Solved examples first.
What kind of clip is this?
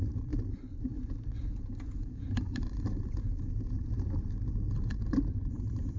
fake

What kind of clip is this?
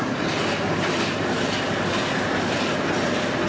real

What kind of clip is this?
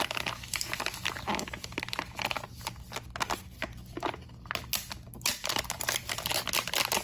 real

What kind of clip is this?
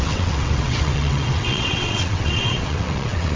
fake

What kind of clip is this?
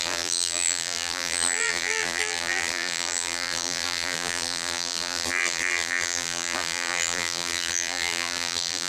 fake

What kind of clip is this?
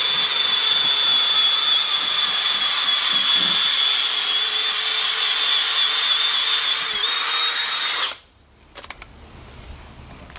real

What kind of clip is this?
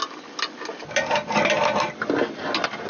real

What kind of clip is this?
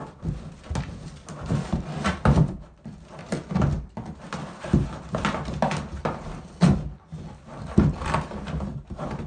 real